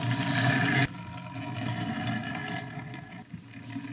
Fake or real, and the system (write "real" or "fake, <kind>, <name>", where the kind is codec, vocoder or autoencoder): real